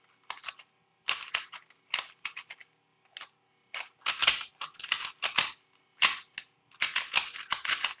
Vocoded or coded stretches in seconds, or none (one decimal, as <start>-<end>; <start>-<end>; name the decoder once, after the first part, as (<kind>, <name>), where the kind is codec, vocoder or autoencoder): 4.2-5.0 (vocoder, BigVGAN v2)